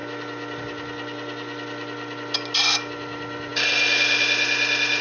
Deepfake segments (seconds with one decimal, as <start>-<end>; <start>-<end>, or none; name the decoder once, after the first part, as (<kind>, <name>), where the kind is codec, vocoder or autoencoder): none